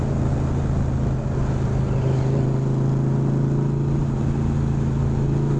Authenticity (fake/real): real